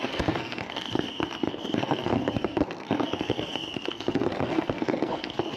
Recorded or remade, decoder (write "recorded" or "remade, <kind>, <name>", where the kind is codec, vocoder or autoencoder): remade, codec, SNAC